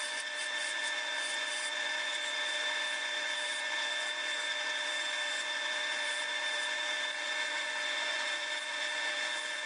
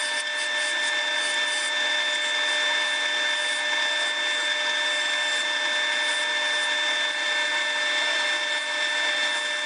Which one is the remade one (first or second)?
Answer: first